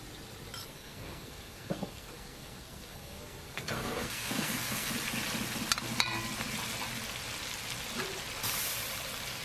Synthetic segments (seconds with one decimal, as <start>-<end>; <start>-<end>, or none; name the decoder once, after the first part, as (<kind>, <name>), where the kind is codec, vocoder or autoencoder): 0.6-4.9 (codec, SNAC)